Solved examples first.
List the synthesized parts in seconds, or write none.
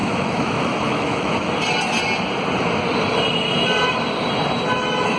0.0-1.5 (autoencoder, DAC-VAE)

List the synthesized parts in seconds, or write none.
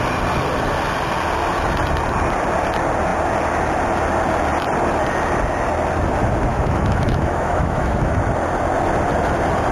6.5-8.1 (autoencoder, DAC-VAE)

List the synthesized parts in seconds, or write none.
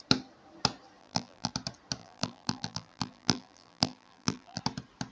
1.0-1.5 (vocoder, BigVGAN v2); 2.0-4.6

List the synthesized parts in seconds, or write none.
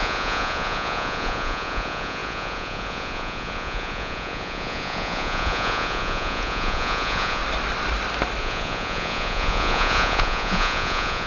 0.0-7.4 (vocoder, Vocos); 8.4-11.3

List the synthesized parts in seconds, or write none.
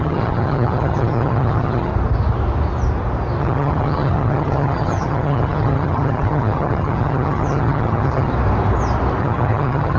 0.0-1.9 (vocoder, HiFi-GAN); 3.4-8.3; 9.2-10.0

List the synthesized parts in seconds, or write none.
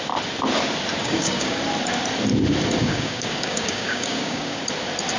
1.0-1.6 (codec, DAC); 2.8-4.6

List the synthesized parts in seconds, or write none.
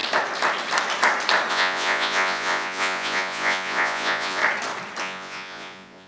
1.5-4.4 (vocoder, Vocos); 5.0-6.1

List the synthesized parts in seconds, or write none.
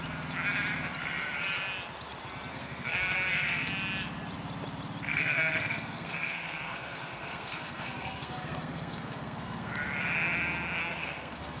2.5-3.7 (codec, SNAC); 5.1-9.7; 10.8-11.6